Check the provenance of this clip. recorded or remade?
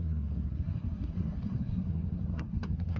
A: remade